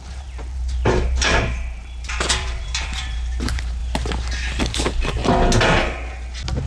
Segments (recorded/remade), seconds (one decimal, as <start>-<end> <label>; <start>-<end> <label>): 0.0-3.8 remade; 3.8-4.6 recorded; 4.6-5.2 remade; 5.2-6.7 recorded

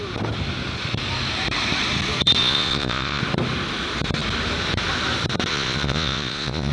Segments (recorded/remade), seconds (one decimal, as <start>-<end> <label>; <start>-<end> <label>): 0.0-2.4 recorded; 2.4-3.2 remade; 3.2-5.5 recorded; 5.5-6.7 remade